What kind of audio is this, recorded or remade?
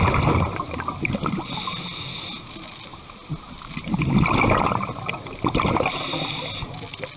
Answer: recorded